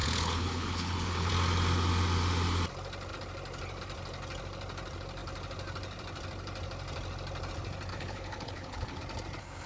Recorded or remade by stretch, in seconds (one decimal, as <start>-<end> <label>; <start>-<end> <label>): 0.0-1.3 remade; 1.3-7.9 recorded; 7.9-9.0 remade; 9.0-9.7 recorded